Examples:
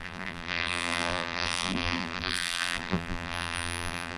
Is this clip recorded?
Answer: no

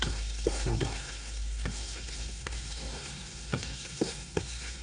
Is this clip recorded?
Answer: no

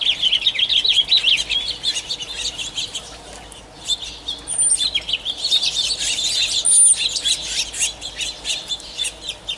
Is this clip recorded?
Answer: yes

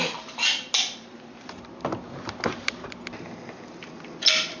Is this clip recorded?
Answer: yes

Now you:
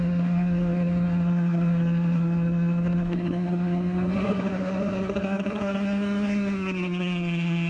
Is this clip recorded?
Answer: no